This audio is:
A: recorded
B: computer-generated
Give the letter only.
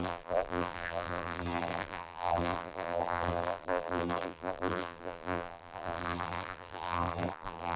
B